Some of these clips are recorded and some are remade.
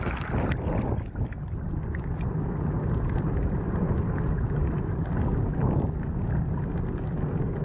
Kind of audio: recorded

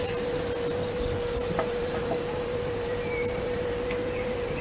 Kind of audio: remade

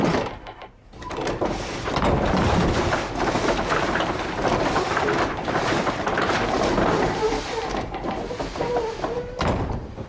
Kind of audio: remade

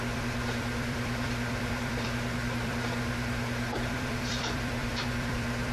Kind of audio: remade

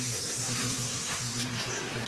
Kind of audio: remade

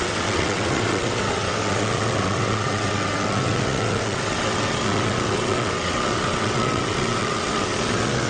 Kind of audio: remade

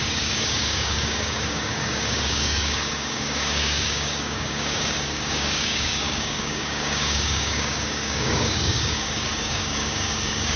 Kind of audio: remade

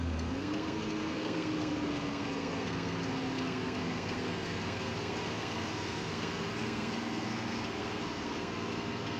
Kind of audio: remade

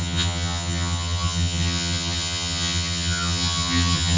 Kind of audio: remade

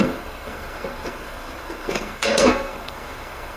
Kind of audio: remade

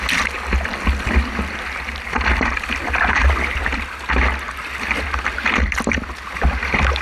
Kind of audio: recorded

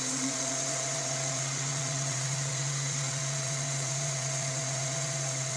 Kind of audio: remade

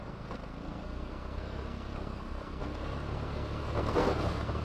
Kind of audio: remade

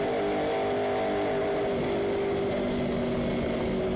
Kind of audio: recorded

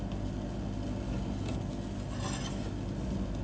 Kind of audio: recorded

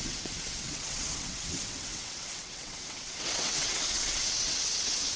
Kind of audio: remade